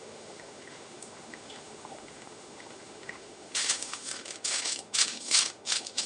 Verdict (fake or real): fake